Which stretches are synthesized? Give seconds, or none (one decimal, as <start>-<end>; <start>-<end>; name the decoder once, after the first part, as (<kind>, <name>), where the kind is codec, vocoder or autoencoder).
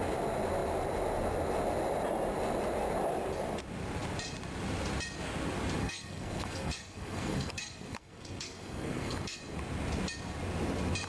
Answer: 5.8-9.4 (codec, SNAC)